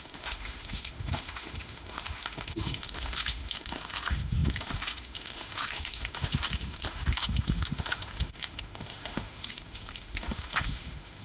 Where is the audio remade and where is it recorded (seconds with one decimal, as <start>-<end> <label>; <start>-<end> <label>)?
0.0-11.2 remade